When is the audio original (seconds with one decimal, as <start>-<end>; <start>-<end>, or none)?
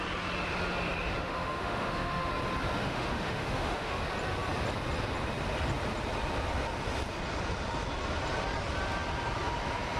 0.0-1.2; 2.3-2.8; 4.0-10.0